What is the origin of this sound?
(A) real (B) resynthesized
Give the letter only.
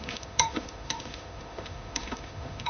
B